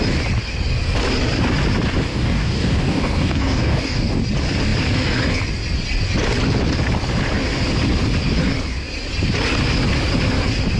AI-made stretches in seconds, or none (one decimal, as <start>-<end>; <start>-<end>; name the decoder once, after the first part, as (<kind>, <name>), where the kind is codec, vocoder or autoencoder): 2.1-4.2 (codec, DAC)